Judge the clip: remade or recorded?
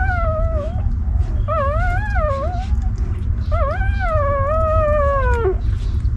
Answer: recorded